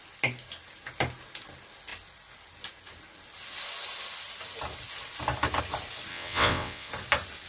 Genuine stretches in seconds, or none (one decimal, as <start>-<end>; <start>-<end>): 0.0-6.1; 6.9-7.5